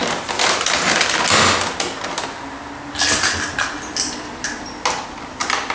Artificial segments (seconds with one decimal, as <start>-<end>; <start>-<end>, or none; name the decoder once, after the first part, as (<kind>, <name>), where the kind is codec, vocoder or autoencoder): none